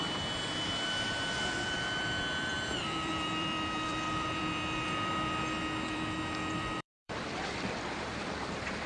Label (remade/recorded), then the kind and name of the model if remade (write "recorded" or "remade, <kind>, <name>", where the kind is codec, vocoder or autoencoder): remade, vocoder, BigVGAN v2